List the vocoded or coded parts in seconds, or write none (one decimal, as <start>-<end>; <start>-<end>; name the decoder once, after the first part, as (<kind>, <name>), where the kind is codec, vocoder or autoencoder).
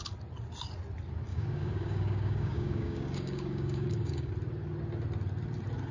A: 1.3-4.3 (codec, DAC)